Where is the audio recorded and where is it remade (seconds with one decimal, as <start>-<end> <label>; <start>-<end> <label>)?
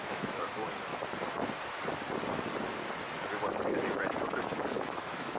0.0-0.9 remade; 0.9-4.1 recorded; 4.1-5.4 remade